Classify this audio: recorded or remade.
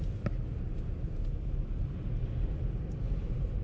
recorded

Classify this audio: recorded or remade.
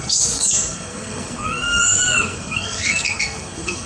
remade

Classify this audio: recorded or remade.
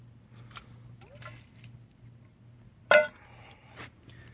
recorded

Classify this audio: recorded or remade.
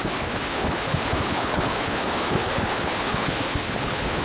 remade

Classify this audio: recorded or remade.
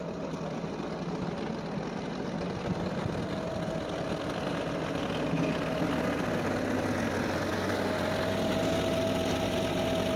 recorded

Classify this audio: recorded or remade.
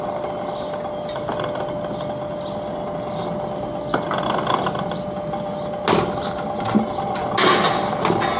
recorded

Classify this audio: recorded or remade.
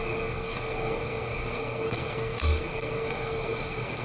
remade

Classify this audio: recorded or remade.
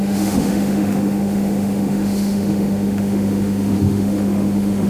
remade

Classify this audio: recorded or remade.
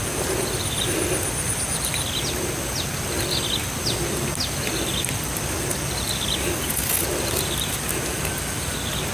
recorded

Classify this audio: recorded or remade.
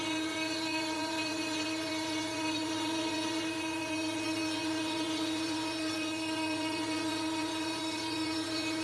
remade